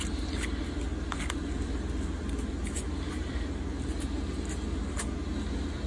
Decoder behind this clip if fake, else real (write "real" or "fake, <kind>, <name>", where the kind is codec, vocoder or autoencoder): real